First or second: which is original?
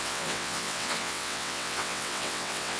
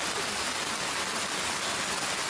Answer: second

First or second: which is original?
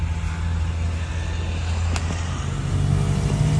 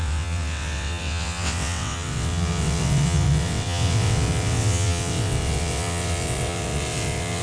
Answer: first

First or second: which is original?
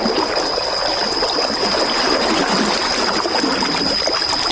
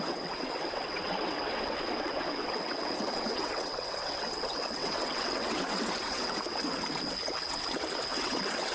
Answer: first